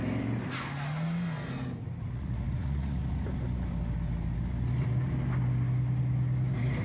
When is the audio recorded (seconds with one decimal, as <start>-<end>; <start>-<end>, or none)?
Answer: 0.0-2.0; 3.0-6.8